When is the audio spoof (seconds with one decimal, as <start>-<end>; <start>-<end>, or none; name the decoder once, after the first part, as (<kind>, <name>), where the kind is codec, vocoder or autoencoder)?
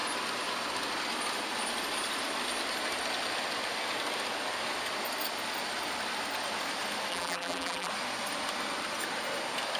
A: 7.1-7.9 (vocoder, BigVGAN v2)